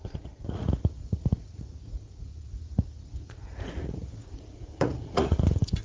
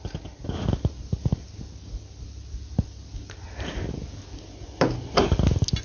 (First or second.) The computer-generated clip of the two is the first